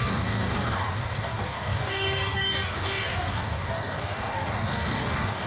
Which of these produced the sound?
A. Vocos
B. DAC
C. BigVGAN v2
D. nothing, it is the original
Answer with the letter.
B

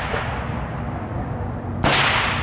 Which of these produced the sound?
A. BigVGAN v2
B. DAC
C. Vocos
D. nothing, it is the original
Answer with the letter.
D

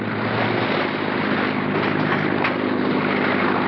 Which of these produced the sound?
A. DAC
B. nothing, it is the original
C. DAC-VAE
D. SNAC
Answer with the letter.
B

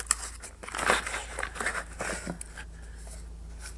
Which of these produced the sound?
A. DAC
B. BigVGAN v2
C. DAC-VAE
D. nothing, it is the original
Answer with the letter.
D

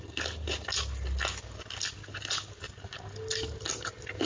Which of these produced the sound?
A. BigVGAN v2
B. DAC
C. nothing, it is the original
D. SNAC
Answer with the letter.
C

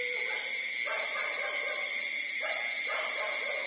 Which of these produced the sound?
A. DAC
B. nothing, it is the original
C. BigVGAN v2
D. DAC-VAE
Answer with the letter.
B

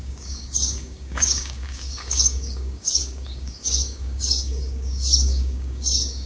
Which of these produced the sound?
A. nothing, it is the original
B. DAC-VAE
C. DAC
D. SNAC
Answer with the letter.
C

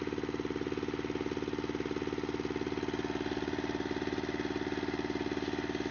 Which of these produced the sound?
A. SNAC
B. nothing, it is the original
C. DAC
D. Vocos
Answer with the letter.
B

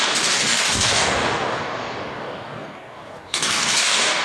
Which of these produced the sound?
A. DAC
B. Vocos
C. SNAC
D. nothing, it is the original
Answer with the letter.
A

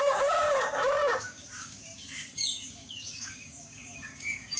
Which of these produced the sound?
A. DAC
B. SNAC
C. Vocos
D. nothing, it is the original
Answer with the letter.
A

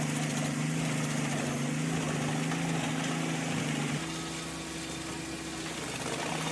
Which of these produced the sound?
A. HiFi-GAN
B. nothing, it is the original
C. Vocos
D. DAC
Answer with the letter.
B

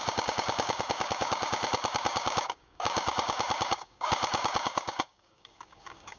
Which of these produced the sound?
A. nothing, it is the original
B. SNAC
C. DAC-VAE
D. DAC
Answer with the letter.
D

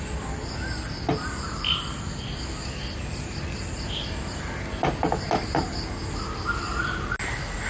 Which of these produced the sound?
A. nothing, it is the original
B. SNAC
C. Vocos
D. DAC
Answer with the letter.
A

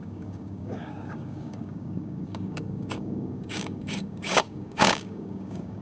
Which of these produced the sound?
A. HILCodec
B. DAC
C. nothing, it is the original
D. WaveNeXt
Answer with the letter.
B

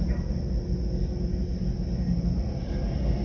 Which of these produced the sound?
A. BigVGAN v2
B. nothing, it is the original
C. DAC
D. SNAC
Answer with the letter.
B